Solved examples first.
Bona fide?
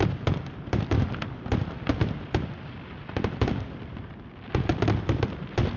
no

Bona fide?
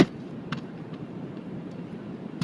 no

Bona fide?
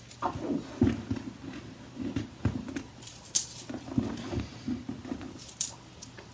yes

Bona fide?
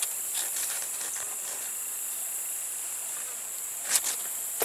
yes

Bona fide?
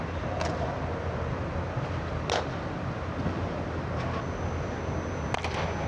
yes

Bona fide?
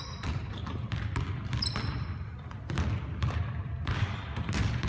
no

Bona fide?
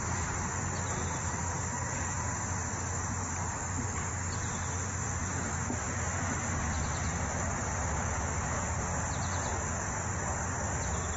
no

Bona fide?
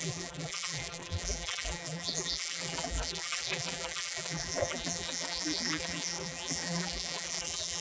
no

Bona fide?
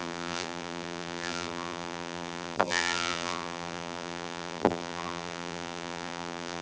no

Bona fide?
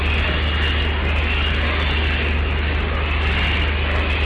yes